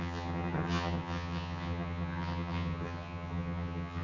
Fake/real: fake